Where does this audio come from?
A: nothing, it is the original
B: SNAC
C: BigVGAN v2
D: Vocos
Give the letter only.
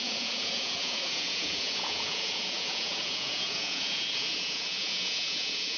D